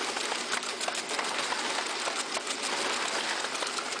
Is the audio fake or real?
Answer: real